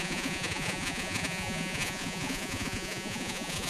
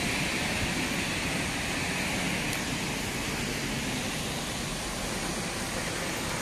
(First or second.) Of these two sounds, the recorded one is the second